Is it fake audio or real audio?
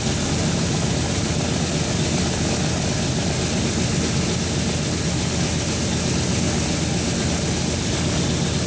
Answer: real